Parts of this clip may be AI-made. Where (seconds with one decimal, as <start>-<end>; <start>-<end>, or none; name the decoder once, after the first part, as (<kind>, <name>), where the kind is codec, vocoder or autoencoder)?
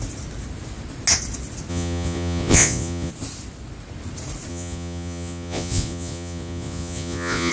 1.7-3.1 (vocoder, Vocos); 4.5-7.5